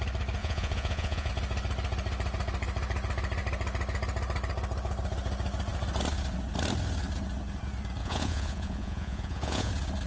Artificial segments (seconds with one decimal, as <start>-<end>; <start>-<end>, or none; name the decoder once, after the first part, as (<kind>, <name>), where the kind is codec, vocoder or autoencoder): 0.4-1.3 (vocoder, Vocos); 8.0-9.7